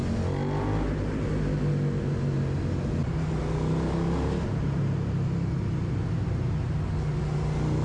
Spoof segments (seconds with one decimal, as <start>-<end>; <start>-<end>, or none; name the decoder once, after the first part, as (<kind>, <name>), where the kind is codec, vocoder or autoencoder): 0.0-1.6 (vocoder, BigVGAN v2)